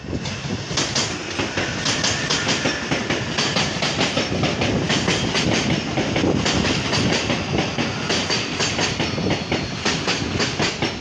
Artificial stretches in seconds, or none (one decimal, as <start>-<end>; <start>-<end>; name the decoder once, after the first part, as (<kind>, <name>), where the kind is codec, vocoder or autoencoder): none